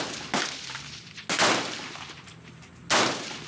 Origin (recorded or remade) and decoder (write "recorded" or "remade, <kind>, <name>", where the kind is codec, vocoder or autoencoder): recorded